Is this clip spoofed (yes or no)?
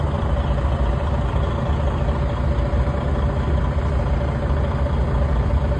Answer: no